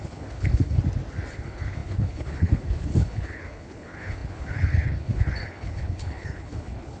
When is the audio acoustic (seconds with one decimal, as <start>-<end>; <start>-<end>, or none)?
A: 0.8-1.3